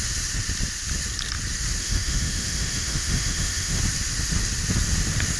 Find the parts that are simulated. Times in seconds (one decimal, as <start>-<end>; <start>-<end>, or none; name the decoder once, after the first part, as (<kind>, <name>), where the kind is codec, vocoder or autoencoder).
1.8-3.8 (autoencoder, DAC-VAE)